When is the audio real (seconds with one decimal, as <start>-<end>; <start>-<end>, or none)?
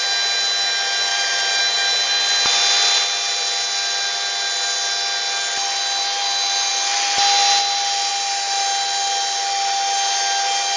0.0-1.1; 1.6-10.8